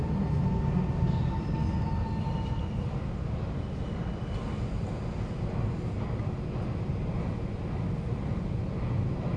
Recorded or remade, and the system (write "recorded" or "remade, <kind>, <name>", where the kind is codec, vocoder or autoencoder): recorded